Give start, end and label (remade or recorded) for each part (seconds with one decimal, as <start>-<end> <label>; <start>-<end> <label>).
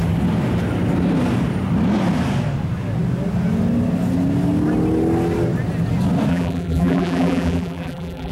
0.0-6.3 recorded; 6.3-8.3 remade